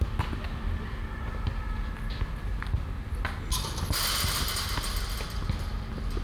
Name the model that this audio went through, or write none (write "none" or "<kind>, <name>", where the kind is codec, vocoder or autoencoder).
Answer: none